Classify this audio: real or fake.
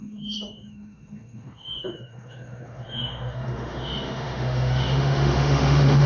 fake